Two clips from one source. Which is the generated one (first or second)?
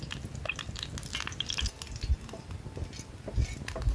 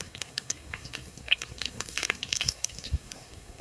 second